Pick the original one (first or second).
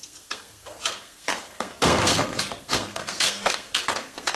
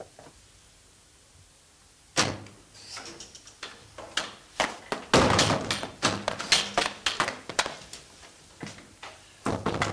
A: second